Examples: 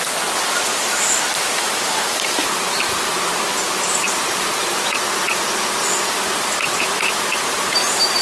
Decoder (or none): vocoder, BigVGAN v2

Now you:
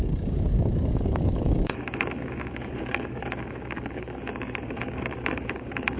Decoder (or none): codec, DAC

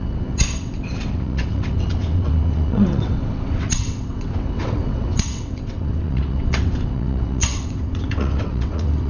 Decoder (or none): vocoder, WaveNeXt